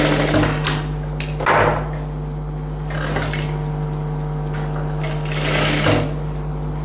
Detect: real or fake real